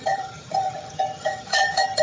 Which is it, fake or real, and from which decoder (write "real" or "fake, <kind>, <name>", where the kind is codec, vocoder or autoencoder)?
fake, vocoder, HiFi-GAN